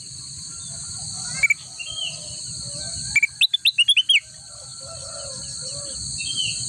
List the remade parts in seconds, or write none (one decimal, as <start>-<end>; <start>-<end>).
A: none